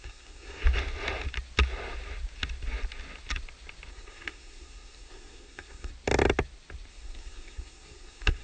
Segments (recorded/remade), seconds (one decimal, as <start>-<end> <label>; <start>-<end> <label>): 0.0-0.6 remade; 0.6-3.9 recorded; 3.9-5.9 remade; 5.9-6.9 recorded; 6.9-8.4 remade